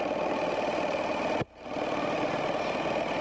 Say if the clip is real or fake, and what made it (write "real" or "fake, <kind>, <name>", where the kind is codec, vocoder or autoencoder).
real